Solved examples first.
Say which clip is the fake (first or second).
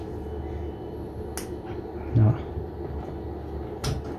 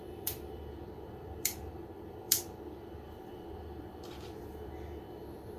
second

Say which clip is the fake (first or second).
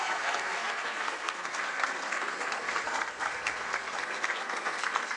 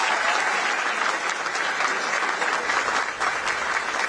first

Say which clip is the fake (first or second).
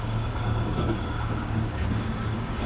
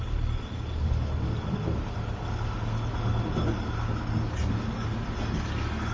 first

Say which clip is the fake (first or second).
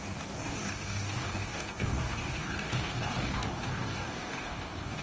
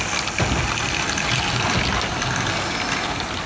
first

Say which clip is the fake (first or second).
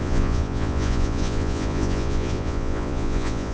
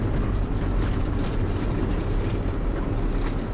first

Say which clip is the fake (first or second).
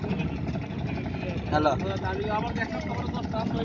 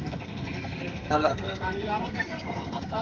second